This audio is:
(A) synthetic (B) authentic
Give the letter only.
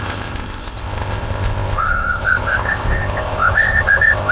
A